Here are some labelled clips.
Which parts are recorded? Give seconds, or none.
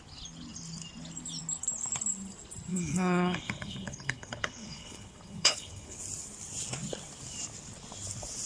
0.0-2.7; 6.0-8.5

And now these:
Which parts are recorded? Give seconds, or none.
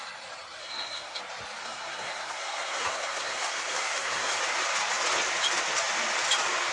0.0-0.6; 1.2-1.6; 4.4-6.7